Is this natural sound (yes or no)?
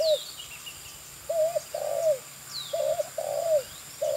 yes